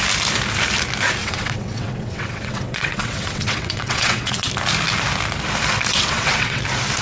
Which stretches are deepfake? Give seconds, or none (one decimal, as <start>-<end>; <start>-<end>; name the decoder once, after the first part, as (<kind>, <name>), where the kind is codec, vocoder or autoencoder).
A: 1.2-4.5 (vocoder, WaveNeXt); 5.9-6.6